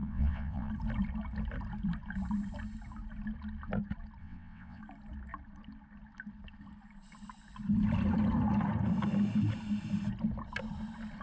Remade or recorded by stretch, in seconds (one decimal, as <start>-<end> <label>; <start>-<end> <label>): 0.0-0.7 remade; 0.7-4.2 recorded; 4.2-4.8 remade; 4.8-11.2 recorded